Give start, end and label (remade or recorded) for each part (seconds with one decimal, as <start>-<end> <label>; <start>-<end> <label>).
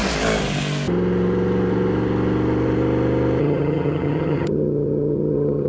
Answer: 0.0-3.4 recorded; 3.4-5.7 remade